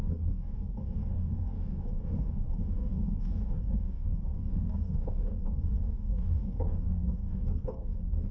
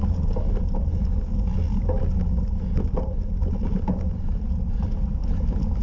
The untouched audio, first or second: second